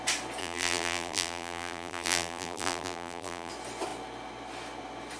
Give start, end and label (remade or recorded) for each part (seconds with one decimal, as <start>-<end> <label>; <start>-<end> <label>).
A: 0.0-0.4 recorded; 0.4-3.5 remade; 3.5-5.2 recorded